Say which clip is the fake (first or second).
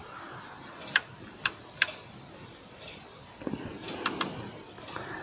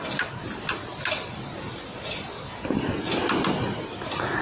first